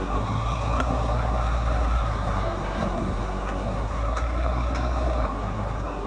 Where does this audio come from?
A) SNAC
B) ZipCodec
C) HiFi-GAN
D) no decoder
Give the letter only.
A